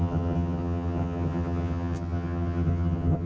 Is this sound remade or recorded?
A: remade